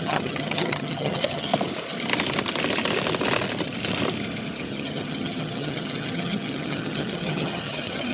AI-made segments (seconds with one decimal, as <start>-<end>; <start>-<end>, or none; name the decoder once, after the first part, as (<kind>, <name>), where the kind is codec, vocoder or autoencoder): 0.0-1.5 (vocoder, HiFi-GAN); 4.7-8.1